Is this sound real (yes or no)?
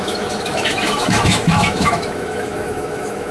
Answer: no